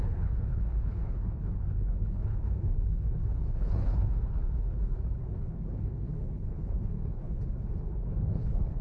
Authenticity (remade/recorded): remade